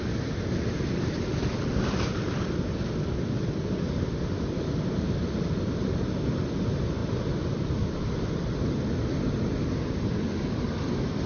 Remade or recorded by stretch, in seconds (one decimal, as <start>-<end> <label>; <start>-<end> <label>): 0.0-11.3 recorded